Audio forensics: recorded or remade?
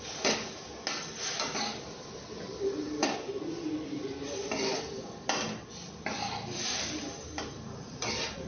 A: recorded